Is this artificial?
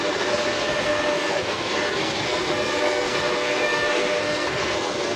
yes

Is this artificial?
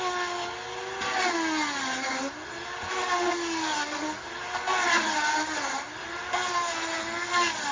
no